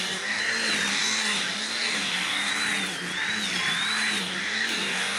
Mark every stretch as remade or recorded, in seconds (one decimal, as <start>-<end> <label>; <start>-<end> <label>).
0.0-0.4 remade; 0.4-0.9 recorded; 0.9-2.5 remade; 2.5-4.2 recorded; 4.2-5.2 remade